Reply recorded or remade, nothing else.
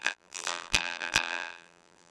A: remade